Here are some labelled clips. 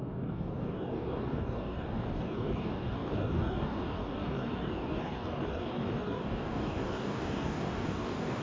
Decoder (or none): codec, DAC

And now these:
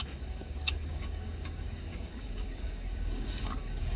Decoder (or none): codec, DAC